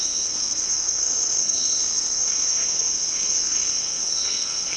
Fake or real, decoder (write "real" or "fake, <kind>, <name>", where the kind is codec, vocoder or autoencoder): fake, codec, SNAC